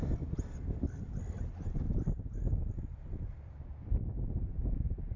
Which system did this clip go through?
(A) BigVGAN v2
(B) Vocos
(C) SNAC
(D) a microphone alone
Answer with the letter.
D